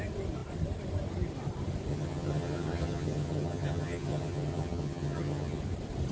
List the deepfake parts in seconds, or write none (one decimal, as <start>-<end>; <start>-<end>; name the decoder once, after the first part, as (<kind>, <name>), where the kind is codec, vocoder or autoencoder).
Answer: 1.9-5.6 (vocoder, HiFi-GAN)